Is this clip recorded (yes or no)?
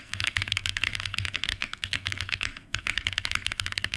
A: no